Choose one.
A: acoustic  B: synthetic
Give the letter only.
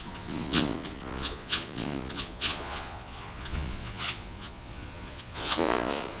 B